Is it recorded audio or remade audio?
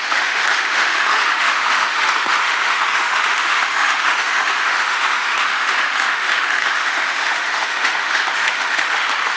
remade